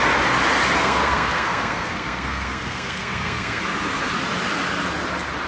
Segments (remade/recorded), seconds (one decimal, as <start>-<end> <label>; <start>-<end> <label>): 0.0-0.8 recorded; 0.8-3.6 remade; 3.6-5.5 recorded